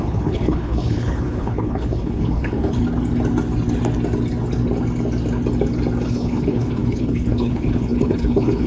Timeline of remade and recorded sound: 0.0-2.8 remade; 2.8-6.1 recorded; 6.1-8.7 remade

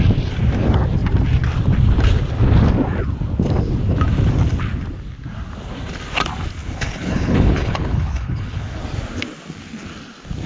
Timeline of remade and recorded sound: 0.0-6.6 recorded; 6.6-8.8 remade; 8.8-10.5 recorded

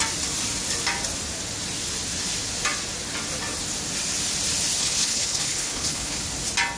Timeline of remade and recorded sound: 0.0-4.8 recorded; 4.8-6.2 remade; 6.2-6.8 recorded

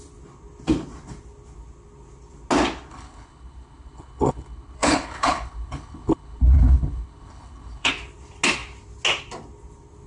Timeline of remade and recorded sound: 0.0-2.9 recorded; 2.9-7.9 remade; 7.9-10.1 recorded

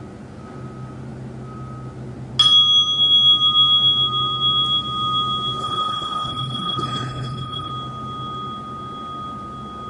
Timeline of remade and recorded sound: 0.0-5.6 recorded; 5.6-7.7 remade; 7.7-9.9 recorded

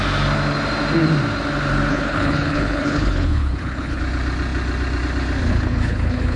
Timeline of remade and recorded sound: 0.0-1.9 recorded; 1.9-4.0 remade; 4.0-5.5 recorded; 5.5-6.4 remade